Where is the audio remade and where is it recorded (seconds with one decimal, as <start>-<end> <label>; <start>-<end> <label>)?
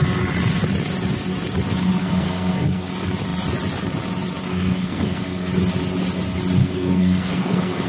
0.0-2.0 recorded; 2.0-2.9 remade; 2.9-4.5 recorded; 4.5-5.5 remade; 5.5-6.6 recorded; 6.6-7.9 remade